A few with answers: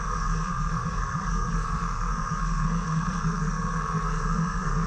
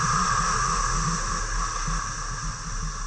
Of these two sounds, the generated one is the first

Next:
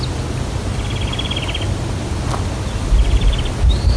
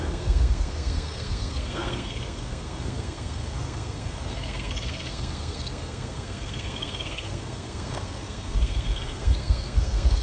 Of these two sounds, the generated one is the second